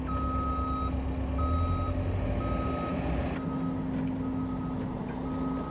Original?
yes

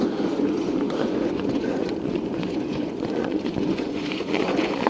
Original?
no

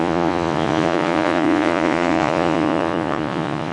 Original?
no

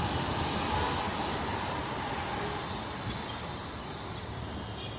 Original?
yes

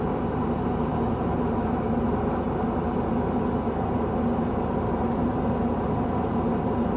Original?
yes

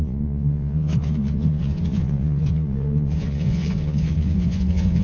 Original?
no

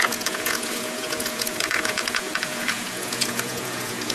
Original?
no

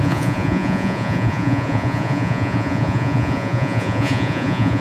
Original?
no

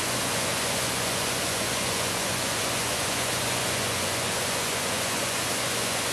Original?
no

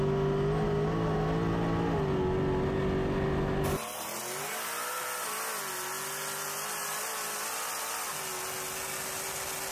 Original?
yes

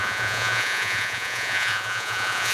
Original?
no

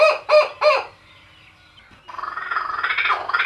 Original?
yes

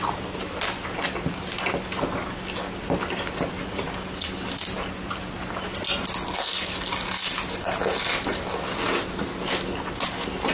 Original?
yes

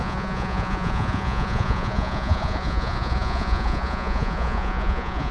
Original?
no